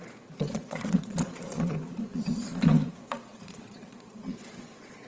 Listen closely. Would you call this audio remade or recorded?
remade